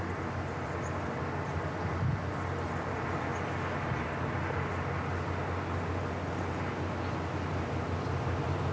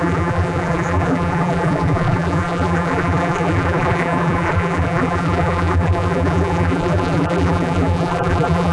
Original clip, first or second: first